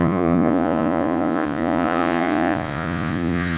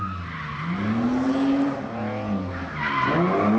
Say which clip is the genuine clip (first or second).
second